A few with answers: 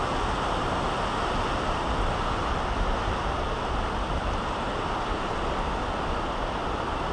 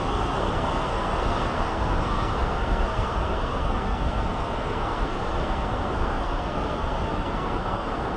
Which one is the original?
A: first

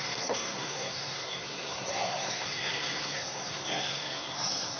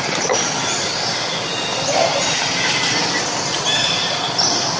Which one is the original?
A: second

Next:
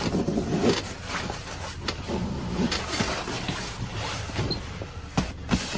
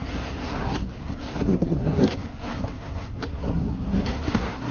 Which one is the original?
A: first